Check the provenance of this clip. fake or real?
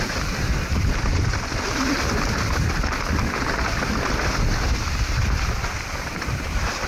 fake